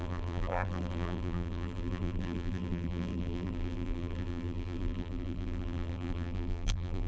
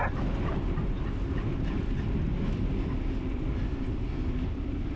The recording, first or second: second